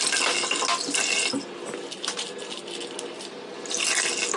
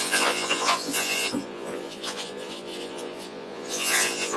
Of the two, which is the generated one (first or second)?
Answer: second